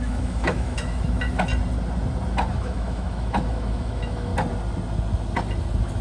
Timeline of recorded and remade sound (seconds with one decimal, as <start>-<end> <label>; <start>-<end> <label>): 0.0-1.5 remade; 1.5-2.5 recorded; 2.5-4.3 remade; 4.3-6.0 recorded